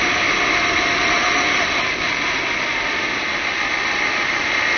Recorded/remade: recorded